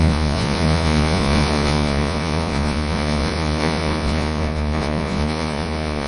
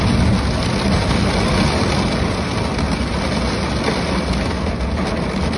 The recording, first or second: second